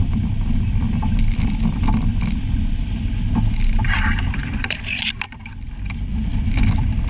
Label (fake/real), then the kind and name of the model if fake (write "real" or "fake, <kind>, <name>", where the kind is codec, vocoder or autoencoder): fake, vocoder, BigVGAN v2